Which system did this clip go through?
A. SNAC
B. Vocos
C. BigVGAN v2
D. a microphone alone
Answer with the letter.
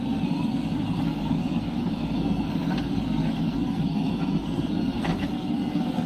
A